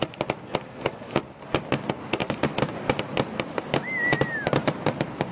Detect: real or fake real